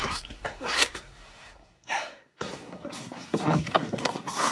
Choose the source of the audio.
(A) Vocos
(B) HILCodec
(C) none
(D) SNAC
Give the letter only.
D